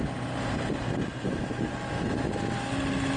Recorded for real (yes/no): yes